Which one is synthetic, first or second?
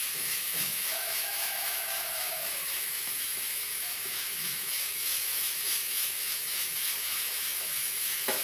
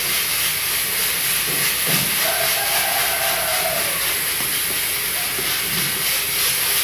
first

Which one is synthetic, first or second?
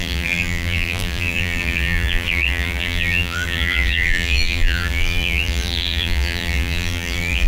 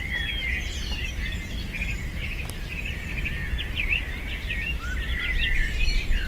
first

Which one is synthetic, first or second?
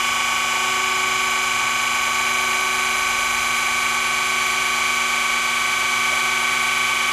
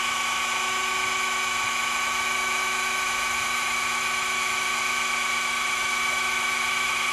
second